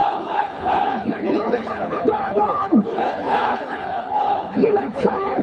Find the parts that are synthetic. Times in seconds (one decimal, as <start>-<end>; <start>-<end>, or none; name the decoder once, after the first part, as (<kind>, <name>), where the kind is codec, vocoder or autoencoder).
0.0-5.4 (codec, HILCodec)